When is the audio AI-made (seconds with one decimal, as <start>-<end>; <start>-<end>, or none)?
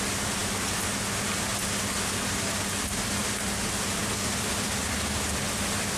none